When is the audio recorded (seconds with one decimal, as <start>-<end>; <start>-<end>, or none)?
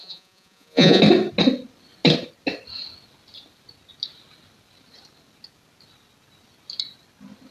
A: 1.0-7.5